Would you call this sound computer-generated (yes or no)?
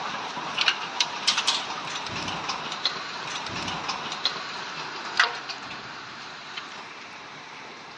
yes